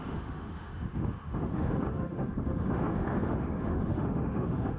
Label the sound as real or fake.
fake